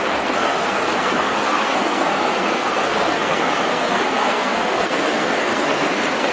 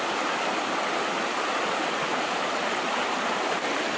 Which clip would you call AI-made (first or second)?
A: first